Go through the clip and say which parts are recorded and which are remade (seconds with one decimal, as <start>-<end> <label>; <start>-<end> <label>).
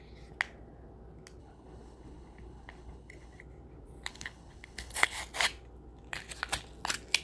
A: 0.0-1.4 recorded; 1.4-3.4 remade; 3.4-4.1 recorded; 4.1-5.2 remade; 5.2-7.2 recorded